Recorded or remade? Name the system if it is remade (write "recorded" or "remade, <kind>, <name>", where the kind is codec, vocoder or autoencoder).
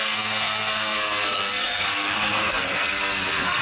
remade, codec, SNAC